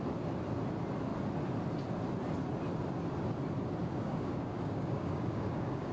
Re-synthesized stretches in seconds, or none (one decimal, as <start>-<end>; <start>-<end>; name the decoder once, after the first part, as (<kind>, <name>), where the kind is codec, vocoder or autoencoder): 3.8-5.9 (codec, DAC)